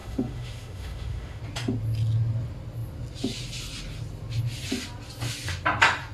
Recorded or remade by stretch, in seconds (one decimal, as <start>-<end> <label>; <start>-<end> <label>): 0.0-1.4 remade; 1.4-6.1 recorded